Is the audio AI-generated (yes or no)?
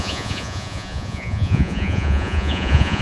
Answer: yes